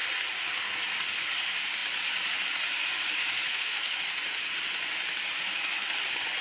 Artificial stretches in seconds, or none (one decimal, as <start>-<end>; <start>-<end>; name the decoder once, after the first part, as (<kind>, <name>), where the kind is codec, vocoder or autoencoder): 3.2-4.0 (autoencoder, DAC-VAE)